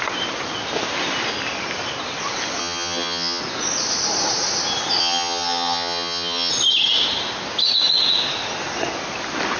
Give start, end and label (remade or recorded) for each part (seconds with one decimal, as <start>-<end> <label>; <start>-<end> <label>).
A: 0.0-2.6 recorded; 2.6-3.4 remade; 3.4-5.0 recorded; 5.0-6.5 remade; 6.5-9.6 recorded